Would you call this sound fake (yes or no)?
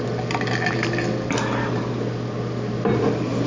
no